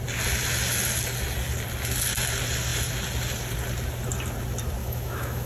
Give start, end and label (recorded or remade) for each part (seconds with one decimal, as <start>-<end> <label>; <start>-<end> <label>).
0.0-4.8 recorded; 4.8-5.5 remade